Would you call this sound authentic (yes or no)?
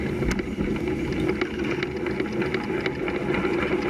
yes